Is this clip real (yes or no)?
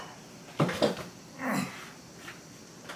yes